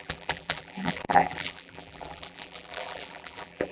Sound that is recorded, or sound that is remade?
remade